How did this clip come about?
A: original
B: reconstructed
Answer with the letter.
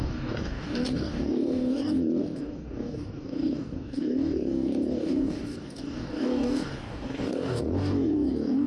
B